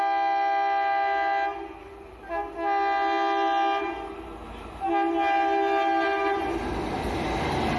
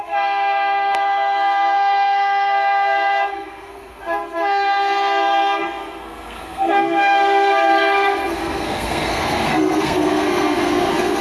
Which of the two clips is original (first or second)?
first